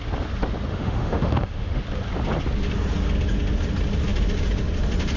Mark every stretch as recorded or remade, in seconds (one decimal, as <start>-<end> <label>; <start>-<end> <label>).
0.0-0.7 recorded; 0.7-1.8 remade; 1.8-5.2 recorded